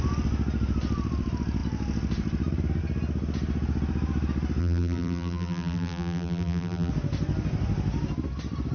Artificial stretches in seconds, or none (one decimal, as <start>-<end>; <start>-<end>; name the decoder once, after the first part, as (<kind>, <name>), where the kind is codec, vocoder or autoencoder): 4.6-6.9 (vocoder, BigVGAN v2)